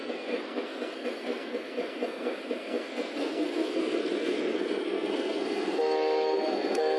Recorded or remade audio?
remade